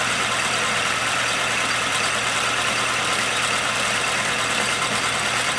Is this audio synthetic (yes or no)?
yes